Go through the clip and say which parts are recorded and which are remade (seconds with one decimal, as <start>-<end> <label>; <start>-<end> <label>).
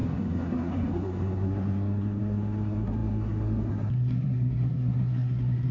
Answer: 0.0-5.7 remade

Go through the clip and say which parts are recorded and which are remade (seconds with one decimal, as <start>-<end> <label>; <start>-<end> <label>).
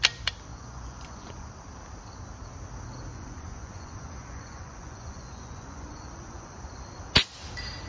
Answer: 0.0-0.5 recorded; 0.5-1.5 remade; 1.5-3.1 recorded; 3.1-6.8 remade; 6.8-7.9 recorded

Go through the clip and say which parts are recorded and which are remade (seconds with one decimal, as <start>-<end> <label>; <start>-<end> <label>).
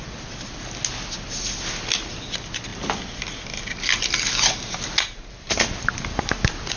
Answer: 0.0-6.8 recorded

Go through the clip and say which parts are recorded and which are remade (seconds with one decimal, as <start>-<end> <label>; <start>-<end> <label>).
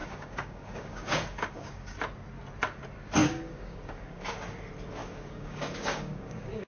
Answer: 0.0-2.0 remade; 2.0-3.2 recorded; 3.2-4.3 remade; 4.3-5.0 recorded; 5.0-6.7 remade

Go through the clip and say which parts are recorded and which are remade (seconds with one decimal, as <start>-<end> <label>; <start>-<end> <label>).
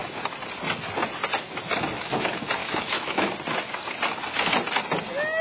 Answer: 0.0-2.6 recorded; 2.6-3.3 remade; 3.3-5.4 recorded